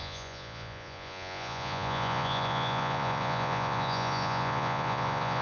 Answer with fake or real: fake